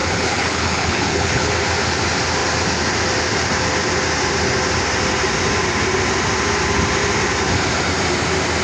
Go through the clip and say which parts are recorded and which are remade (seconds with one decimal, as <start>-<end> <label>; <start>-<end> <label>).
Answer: 0.0-1.5 remade; 1.5-8.6 recorded